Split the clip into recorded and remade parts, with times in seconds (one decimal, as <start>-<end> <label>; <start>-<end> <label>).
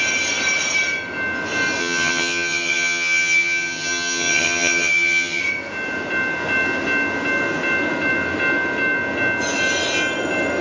0.0-1.8 recorded; 1.8-5.4 remade; 5.4-10.6 recorded